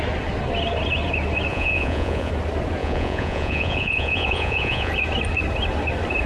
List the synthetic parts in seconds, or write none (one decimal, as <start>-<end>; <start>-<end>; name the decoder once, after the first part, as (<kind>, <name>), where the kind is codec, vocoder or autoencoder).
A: 1.5-2.3 (vocoder, Vocos); 2.8-4.9